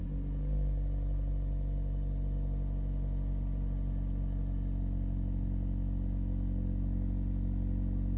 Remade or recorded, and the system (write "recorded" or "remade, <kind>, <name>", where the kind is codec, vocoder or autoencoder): recorded